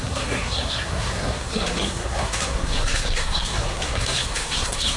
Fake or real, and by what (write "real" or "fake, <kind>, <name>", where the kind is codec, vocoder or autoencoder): fake, codec, SNAC